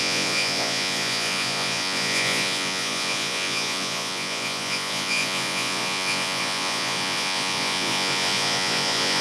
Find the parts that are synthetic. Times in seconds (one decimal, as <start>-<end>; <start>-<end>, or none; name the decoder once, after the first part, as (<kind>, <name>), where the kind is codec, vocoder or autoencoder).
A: 0.0-9.2 (vocoder, Vocos)